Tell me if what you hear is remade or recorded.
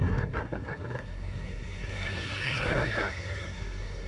remade